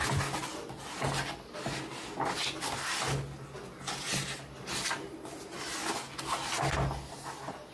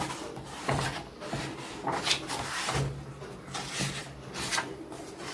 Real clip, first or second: first